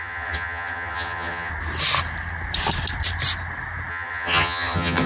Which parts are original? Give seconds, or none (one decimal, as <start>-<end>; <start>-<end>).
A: 1.5-3.9